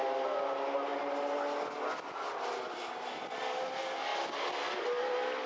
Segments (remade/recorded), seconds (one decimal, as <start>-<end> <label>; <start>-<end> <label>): 0.0-5.5 recorded